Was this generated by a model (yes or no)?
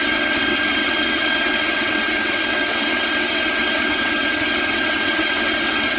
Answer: yes